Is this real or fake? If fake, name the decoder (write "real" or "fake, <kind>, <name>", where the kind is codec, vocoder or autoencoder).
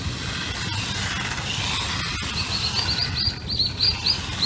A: real